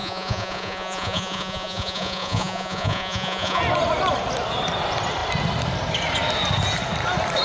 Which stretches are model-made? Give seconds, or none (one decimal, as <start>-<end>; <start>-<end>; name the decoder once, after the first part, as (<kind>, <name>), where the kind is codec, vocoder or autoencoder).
0.0-3.6 (vocoder, Vocos)